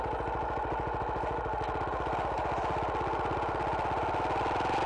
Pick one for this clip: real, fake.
real